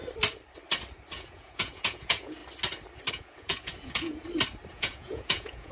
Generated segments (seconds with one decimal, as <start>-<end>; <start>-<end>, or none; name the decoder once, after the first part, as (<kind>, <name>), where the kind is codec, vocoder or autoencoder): 1.1-2.4 (vocoder, Vocos); 3.1-4.2; 4.7-5.7